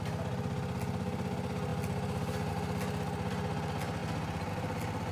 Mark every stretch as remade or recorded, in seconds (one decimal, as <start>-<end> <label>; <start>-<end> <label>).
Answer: 0.0-5.1 recorded